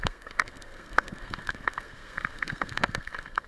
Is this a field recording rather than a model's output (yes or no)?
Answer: no